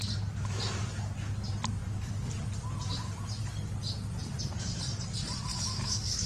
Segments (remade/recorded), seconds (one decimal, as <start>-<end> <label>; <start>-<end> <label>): 0.0-5.5 recorded; 5.5-6.3 remade